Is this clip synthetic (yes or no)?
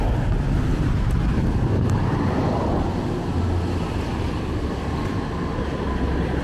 no